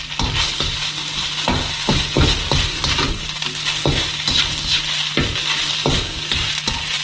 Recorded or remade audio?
recorded